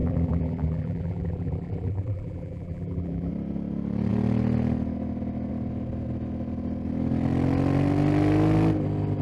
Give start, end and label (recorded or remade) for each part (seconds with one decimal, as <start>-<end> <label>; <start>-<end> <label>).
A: 0.0-3.3 remade; 3.3-9.2 recorded